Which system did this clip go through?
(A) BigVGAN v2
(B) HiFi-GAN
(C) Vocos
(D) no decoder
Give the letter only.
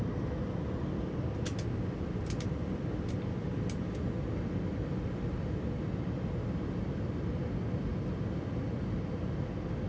D